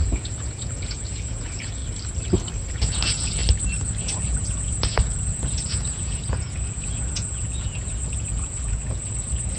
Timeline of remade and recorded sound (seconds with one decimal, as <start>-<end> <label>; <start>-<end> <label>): 0.0-1.8 remade; 1.8-2.7 recorded; 2.7-3.4 remade; 3.4-4.0 recorded; 4.0-9.6 remade